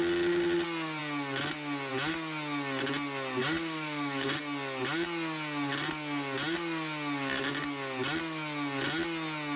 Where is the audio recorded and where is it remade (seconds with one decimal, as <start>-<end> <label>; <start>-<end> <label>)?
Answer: 0.0-3.4 recorded; 3.4-4.4 remade; 4.4-9.6 recorded